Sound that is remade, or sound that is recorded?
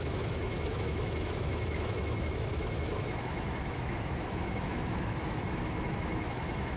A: remade